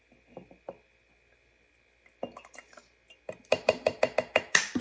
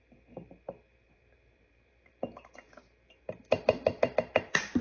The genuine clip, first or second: first